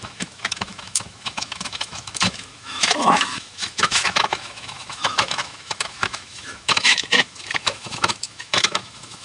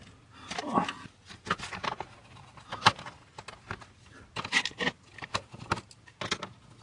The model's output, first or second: first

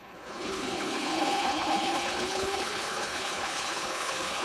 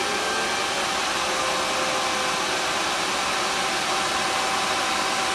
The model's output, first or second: first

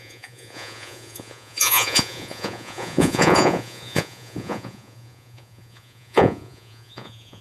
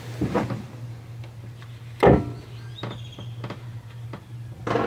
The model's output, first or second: first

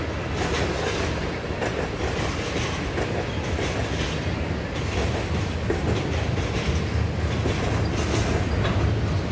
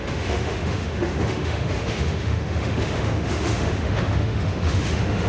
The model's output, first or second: second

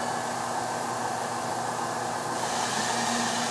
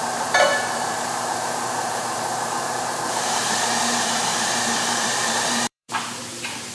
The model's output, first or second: second